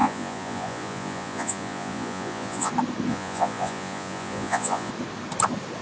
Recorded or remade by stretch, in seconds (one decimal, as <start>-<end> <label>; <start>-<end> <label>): 0.0-2.7 remade; 2.7-3.1 recorded; 3.1-4.9 remade; 4.9-5.8 recorded